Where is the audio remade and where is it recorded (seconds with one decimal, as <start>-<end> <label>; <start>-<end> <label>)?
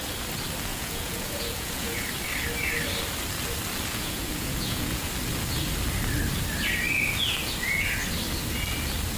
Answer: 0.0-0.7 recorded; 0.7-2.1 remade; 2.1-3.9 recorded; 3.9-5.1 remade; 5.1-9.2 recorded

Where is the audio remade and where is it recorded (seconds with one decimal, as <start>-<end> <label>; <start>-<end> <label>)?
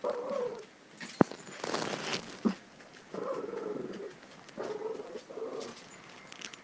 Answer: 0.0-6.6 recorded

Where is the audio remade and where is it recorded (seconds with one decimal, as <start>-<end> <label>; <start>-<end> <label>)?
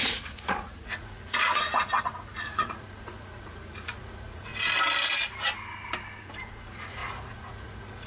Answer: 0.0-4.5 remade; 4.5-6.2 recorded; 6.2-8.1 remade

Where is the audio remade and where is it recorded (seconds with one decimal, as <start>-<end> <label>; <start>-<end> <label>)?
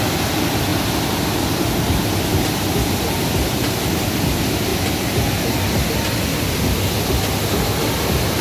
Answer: 0.0-8.4 recorded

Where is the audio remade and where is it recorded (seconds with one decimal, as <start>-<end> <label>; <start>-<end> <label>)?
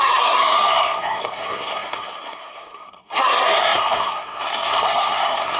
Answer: 0.0-5.6 remade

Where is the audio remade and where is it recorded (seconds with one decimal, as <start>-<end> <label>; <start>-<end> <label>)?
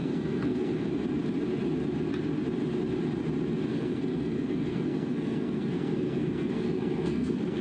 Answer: 0.0-0.9 remade; 0.9-3.7 recorded; 3.7-7.6 remade